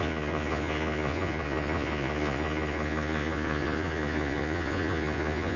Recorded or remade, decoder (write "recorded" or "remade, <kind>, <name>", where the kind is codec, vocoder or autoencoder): remade, vocoder, Vocos